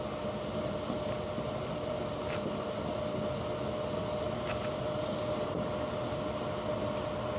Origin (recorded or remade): recorded